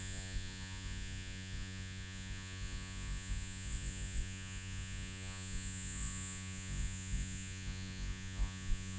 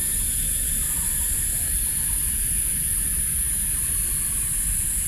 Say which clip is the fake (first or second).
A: first